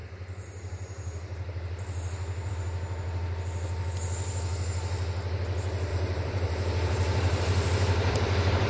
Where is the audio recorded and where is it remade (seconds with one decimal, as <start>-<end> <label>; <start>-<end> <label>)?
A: 0.0-5.9 recorded; 5.9-8.7 remade

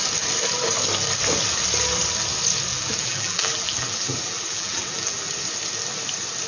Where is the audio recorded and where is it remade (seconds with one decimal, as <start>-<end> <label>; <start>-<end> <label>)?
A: 0.0-2.7 recorded; 2.7-5.3 remade; 5.3-6.5 recorded

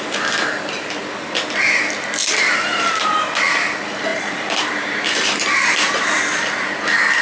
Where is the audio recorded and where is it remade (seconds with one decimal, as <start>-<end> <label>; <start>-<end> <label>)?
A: 0.0-2.2 recorded; 2.2-3.2 remade; 3.2-4.1 recorded; 4.1-6.2 remade; 6.2-7.2 recorded

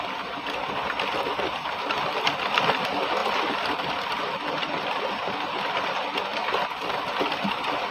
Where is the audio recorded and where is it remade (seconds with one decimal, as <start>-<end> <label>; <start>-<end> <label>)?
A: 0.0-3.2 recorded; 3.2-5.0 remade; 5.0-7.9 recorded

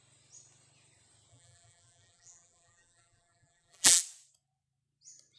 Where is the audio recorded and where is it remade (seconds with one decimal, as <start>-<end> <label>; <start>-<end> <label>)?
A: 0.0-1.3 recorded; 1.3-4.0 remade; 4.0-5.4 recorded

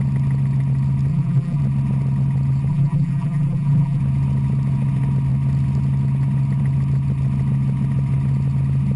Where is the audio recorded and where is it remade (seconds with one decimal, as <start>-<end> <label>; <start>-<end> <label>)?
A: 0.0-1.1 recorded; 1.1-1.6 remade; 1.6-2.7 recorded; 2.7-4.0 remade; 4.0-9.0 recorded

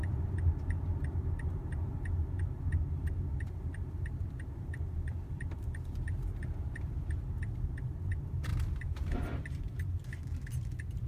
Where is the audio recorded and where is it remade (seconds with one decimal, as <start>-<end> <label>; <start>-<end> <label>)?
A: 0.0-3.9 recorded; 3.9-8.5 remade; 8.5-9.1 recorded; 9.1-11.1 remade

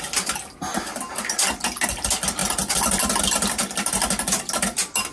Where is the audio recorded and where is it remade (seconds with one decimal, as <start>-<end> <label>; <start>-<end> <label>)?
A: 0.0-5.1 recorded